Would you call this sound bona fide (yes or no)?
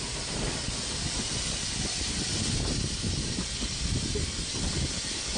yes